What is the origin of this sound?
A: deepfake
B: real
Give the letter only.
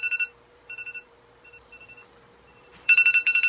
A